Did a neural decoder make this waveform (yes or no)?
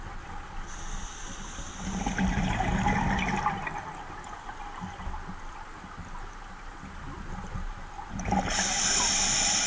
no